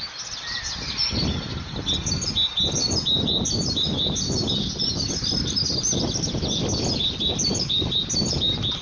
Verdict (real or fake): real